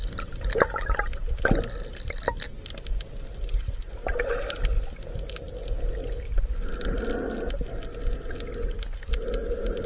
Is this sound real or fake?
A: real